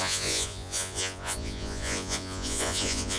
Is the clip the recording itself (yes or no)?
no